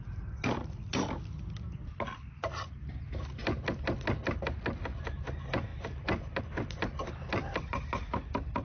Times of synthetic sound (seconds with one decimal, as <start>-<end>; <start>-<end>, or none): none